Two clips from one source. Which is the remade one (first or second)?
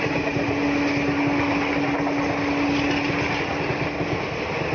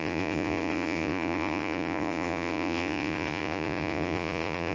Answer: second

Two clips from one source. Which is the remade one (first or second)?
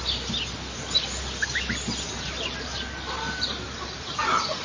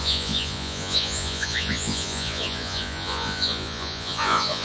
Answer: second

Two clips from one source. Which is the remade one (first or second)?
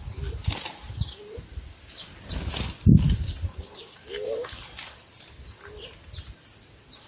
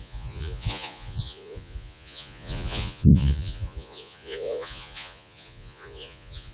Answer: second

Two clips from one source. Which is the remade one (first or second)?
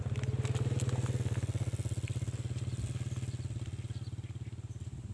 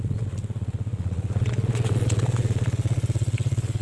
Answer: second